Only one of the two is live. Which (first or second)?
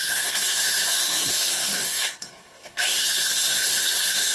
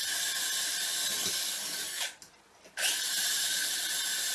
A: second